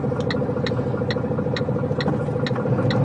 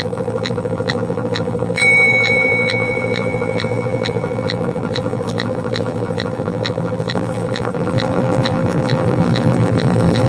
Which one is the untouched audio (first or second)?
first